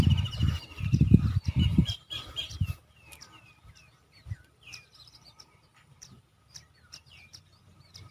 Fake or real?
fake